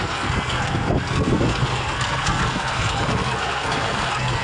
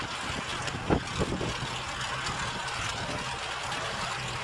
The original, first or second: second